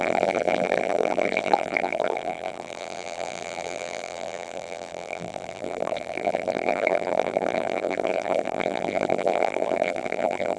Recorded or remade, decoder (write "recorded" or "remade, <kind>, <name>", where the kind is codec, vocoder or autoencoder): remade, vocoder, BigVGAN v2